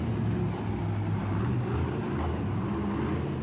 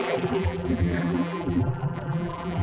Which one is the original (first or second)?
first